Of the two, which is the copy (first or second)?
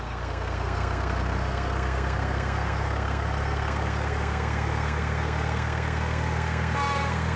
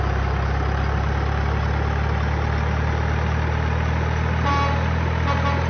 first